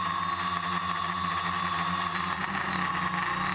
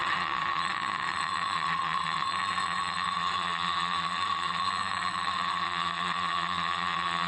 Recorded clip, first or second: first